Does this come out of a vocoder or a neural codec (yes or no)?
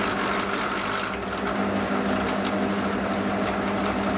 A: no